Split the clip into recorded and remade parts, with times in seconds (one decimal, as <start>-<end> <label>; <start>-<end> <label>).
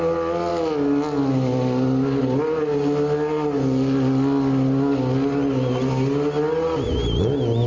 0.0-7.7 recorded